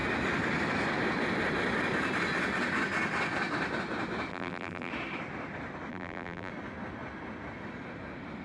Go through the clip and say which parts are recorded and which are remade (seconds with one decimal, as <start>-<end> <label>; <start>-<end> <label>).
0.0-4.3 recorded; 4.3-4.9 remade; 4.9-5.9 recorded; 5.9-6.5 remade; 6.5-8.4 recorded